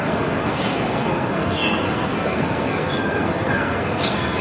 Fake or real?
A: fake